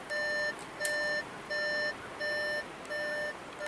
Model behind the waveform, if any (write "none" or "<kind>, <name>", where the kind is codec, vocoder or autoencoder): none